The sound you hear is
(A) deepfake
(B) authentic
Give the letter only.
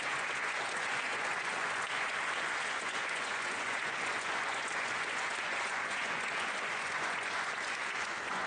A